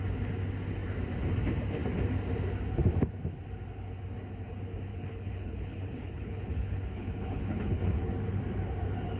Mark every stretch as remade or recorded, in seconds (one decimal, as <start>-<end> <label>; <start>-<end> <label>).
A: 0.0-4.9 recorded; 4.9-8.1 remade; 8.1-9.2 recorded